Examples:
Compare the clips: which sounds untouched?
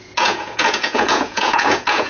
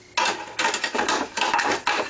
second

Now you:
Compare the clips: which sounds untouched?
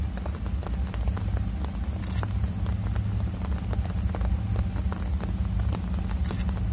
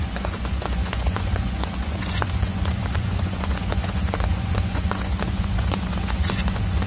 first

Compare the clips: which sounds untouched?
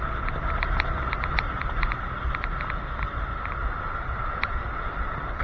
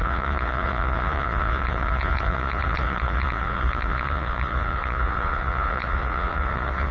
first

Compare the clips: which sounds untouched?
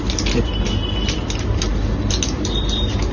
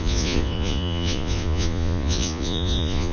first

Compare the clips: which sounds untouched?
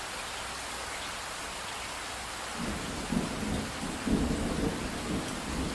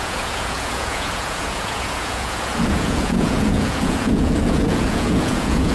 first